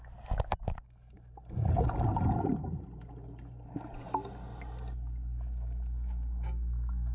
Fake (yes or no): no